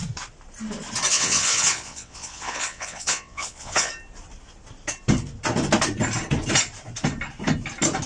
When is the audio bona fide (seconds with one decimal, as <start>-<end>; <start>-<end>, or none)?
0.0-1.1; 3.9-8.1